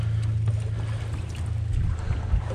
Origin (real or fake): real